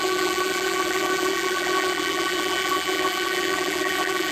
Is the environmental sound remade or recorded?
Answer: remade